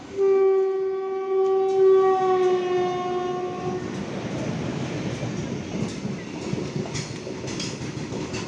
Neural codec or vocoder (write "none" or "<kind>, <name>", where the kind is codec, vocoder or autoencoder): none